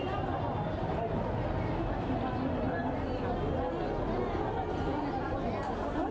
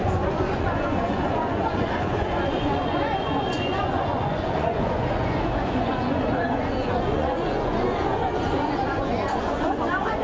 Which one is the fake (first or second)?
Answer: second